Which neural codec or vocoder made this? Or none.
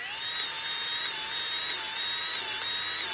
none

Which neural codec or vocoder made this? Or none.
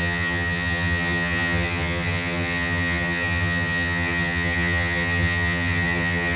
vocoder, HiFi-GAN